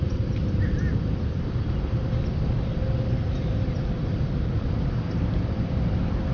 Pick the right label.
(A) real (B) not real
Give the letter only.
B